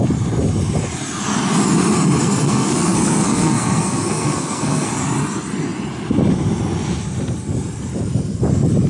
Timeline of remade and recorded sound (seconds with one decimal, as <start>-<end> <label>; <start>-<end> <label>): 0.0-2.2 recorded; 2.2-4.9 remade; 4.9-8.9 recorded